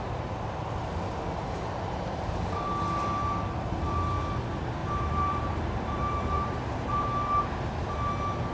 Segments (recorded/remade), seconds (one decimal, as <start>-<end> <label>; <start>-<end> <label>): 0.0-0.8 recorded; 0.8-2.3 remade; 2.3-4.8 recorded; 4.8-7.9 remade; 7.9-8.5 recorded